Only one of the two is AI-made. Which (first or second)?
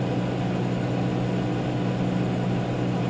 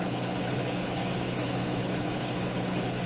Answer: second